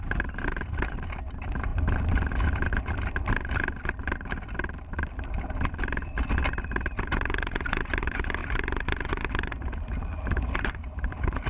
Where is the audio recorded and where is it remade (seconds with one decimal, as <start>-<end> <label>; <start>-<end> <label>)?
0.0-1.7 remade; 1.7-6.6 recorded; 6.6-8.4 remade; 8.4-9.1 recorded; 9.1-11.5 remade